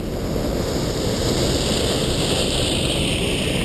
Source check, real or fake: real